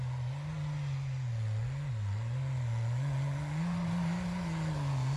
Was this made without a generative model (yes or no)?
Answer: yes